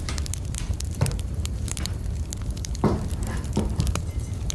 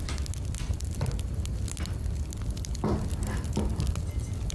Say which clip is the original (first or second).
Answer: second